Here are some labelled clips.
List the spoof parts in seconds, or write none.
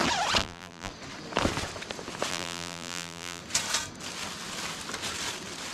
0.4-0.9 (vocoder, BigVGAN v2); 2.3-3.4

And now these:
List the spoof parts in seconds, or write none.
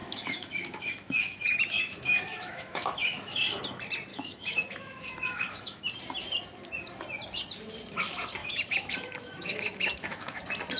0.0-3.6 (autoencoder, DAC-VAE); 4.1-5.8; 8.4-10.4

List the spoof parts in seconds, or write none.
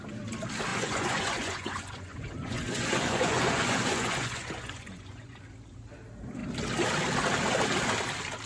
0.7-5.4 (vocoder, Vocos)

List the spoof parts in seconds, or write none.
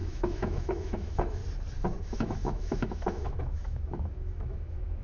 0.0-1.4 (autoencoder, DAC-VAE); 2.0-5.0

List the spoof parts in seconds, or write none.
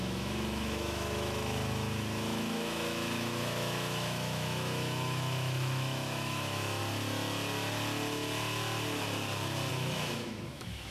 0.0-6.8 (autoencoder, DAC-VAE); 9.7-10.9